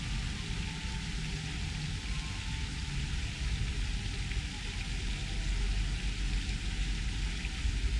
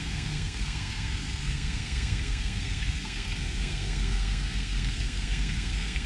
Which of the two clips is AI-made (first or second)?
second